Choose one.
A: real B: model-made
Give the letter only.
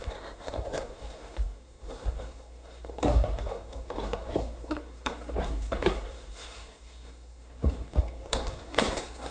B